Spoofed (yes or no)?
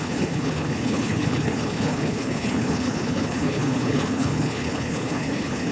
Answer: yes